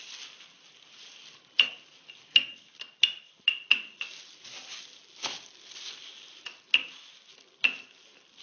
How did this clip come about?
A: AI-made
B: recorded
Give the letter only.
B